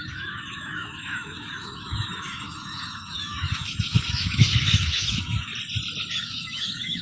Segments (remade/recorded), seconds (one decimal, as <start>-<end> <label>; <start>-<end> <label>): 0.0-5.5 remade; 5.5-6.2 recorded; 6.2-7.0 remade